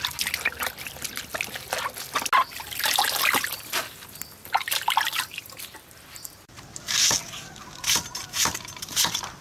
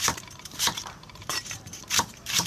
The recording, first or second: first